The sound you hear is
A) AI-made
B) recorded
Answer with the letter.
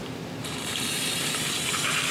A